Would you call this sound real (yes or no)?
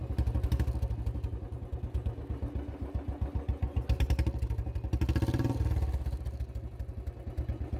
yes